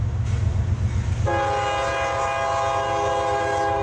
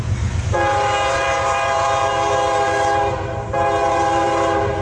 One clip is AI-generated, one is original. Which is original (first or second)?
first